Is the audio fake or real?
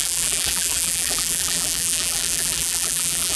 fake